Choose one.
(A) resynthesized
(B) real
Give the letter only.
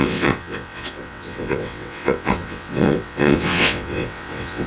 A